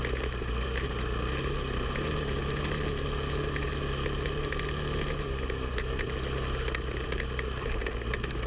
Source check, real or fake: real